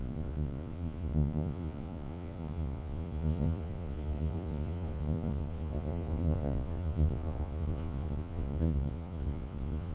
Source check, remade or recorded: remade